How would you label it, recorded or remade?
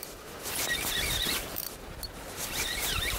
remade